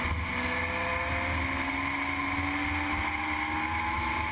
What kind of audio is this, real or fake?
real